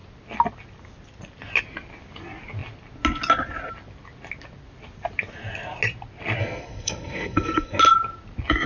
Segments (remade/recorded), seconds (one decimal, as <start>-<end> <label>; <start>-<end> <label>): 0.0-6.4 recorded; 6.4-7.8 remade; 7.8-8.7 recorded